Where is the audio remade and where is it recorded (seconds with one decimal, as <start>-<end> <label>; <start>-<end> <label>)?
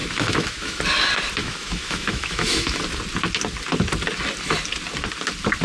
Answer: 0.0-0.8 remade; 0.8-1.4 recorded; 1.4-2.8 remade; 2.8-5.6 recorded